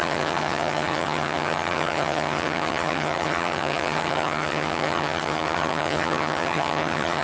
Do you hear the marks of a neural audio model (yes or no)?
yes